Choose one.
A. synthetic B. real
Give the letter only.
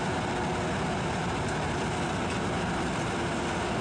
B